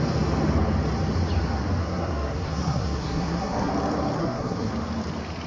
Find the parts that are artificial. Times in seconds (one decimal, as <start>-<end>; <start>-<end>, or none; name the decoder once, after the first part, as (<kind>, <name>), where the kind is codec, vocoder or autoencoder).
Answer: 1.8-3.7 (codec, SNAC); 4.2-4.7